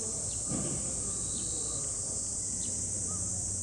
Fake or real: real